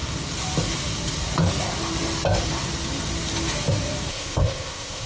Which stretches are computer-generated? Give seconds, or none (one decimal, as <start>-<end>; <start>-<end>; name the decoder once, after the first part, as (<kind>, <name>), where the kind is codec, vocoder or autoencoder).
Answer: 4.1-5.1 (codec, ZipCodec)